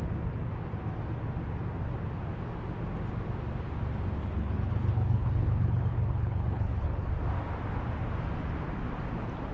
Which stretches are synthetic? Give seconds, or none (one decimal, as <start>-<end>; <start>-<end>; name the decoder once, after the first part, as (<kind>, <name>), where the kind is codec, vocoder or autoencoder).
4.2-7.1 (codec, HILCodec)

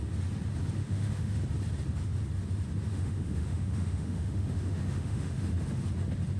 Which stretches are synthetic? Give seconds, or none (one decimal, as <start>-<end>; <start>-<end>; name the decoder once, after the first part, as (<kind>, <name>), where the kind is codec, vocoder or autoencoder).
0.8-1.4 (autoencoder, DAC-VAE); 2.9-5.5

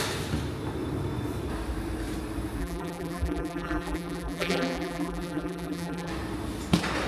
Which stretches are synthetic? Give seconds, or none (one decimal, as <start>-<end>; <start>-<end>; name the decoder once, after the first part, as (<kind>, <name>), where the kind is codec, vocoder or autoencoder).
2.6-6.1 (vocoder, BigVGAN v2)

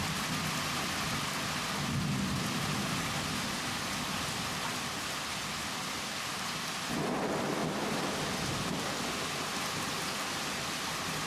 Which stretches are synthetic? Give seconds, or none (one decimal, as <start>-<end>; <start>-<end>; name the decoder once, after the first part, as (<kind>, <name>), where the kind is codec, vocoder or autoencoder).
none

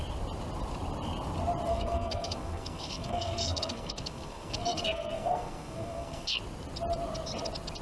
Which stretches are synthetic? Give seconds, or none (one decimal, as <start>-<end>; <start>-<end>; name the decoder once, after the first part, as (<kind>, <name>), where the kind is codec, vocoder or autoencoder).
1.7-6.4 (codec, SNAC)

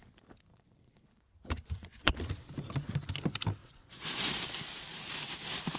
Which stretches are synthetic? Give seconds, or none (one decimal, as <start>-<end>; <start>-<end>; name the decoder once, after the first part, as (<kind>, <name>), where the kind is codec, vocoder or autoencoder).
0.5-2.1 (vocoder, Vocos); 3.6-4.3

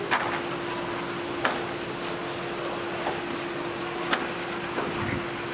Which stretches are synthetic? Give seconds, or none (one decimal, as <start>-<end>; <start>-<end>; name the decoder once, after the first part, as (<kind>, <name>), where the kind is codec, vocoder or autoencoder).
none